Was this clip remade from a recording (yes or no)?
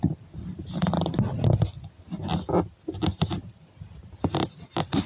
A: no